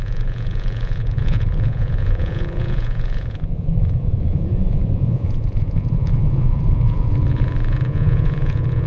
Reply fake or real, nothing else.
fake